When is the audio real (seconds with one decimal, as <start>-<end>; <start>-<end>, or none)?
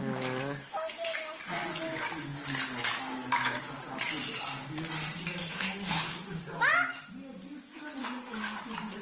0.0-0.7; 1.4-5.4; 6.4-8.0; 8.6-9.0